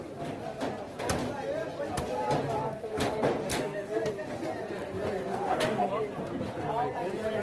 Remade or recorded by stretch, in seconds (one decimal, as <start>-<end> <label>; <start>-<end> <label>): 0.0-3.5 recorded; 3.5-4.0 remade; 4.0-5.3 recorded; 5.3-5.9 remade; 5.9-7.4 recorded